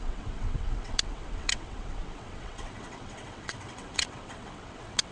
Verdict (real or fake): fake